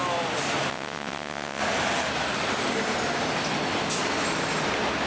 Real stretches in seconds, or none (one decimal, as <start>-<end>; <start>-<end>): 0.0-0.7; 1.6-5.1